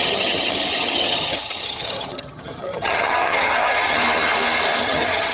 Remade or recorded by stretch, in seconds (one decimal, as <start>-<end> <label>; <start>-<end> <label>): 0.0-4.0 remade; 4.0-4.8 recorded; 4.8-5.3 remade